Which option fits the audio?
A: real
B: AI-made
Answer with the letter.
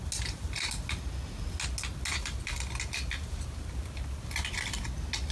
A